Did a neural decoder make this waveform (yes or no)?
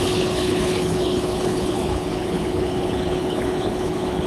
yes